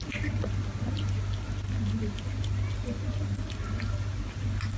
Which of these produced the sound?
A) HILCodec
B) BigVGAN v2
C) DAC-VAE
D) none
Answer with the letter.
D